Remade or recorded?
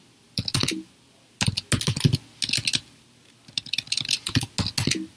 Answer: recorded